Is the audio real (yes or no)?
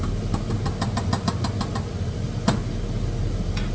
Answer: yes